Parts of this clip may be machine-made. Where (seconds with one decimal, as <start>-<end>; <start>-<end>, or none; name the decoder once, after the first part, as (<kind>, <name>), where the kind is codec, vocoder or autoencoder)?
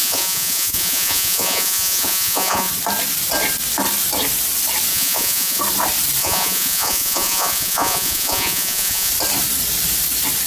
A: 0.0-2.7 (vocoder, Vocos); 4.9-5.6; 6.2-9.1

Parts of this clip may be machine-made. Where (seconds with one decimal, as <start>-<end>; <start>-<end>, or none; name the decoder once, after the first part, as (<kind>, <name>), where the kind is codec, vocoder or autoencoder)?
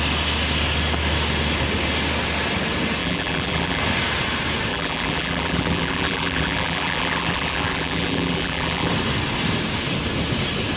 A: 3.0-3.8 (vocoder, BigVGAN v2); 4.7-8.9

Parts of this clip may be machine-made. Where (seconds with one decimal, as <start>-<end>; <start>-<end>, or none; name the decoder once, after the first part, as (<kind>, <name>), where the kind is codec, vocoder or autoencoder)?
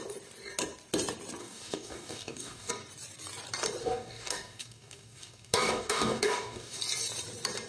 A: 1.4-2.7 (codec, DAC); 3.8-6.8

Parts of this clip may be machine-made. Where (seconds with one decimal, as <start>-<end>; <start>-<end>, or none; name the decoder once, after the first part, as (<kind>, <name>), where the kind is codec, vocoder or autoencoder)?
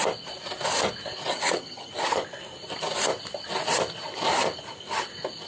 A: 1.3-1.9 (vocoder, HiFi-GAN)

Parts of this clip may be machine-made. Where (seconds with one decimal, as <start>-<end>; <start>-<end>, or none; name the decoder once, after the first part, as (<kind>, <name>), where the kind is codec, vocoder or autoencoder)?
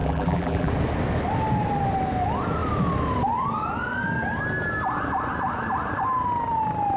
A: 0.0-0.7 (vocoder, BigVGAN v2)